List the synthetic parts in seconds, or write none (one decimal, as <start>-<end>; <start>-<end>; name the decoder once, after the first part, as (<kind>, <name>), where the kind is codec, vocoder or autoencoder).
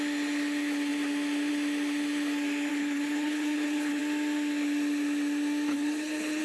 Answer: 2.7-4.0 (codec, HILCodec); 5.7-6.4